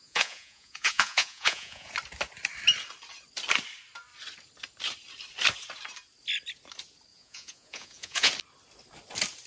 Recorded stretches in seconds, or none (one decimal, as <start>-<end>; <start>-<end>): 1.9-7.1; 8.3-9.5